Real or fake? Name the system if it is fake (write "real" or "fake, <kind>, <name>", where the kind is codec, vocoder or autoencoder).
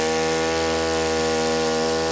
real